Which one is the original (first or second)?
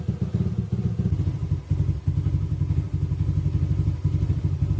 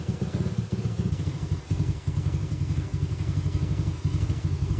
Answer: first